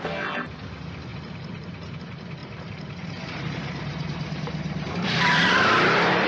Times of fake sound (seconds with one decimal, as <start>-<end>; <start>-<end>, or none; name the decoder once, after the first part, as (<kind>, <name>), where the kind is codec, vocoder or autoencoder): 2.4-6.3 (vocoder, BigVGAN v2)